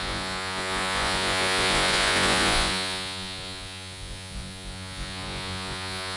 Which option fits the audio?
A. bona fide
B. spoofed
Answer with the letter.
B